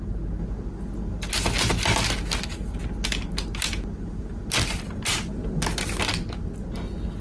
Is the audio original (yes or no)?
yes